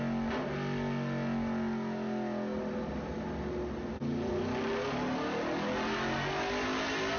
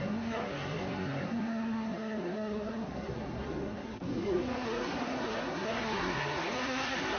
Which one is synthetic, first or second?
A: second